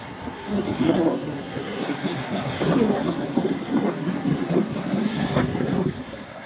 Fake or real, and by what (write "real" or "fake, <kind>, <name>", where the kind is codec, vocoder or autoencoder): fake, codec, SNAC